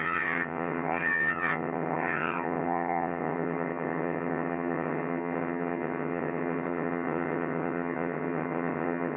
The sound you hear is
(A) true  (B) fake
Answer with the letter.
B